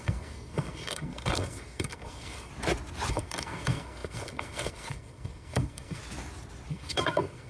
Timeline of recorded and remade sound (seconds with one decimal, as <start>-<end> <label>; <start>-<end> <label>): 0.0-2.5 remade; 2.5-3.1 recorded; 3.1-6.0 remade; 6.0-6.7 recorded; 6.7-7.5 remade